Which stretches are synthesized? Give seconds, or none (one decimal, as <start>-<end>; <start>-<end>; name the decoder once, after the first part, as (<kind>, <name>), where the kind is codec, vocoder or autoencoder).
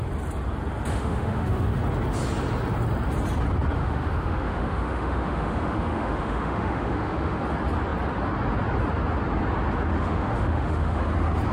0.9-1.8 (autoencoder, DAC-VAE); 3.8-7.4; 9.9-11.0